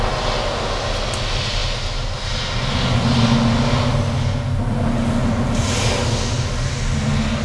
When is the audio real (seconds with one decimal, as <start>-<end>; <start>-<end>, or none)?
0.0-7.4